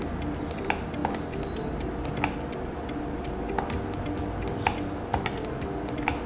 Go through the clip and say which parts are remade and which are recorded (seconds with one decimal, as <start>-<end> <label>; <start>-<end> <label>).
0.0-6.3 recorded